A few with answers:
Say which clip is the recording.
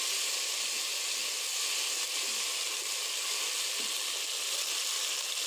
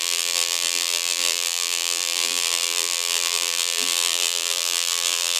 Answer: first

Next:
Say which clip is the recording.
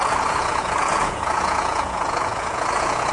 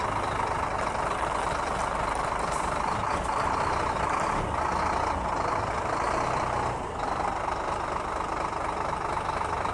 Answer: second